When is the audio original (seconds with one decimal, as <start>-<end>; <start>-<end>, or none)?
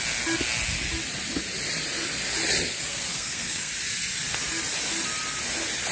0.0-2.9; 3.7-5.9